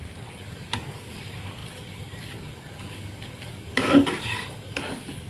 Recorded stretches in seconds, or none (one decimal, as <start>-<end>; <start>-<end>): none